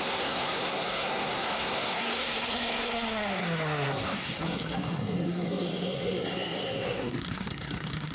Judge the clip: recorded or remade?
remade